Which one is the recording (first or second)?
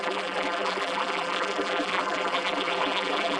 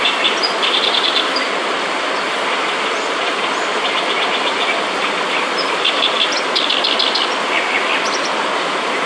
second